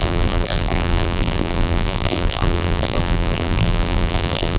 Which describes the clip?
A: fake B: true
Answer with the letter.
A